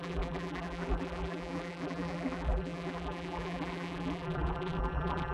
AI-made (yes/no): yes